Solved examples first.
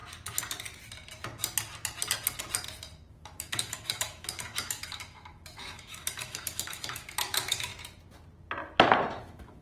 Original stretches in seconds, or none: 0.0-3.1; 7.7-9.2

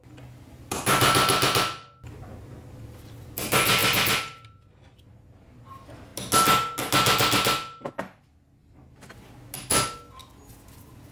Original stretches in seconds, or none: 0.0-11.1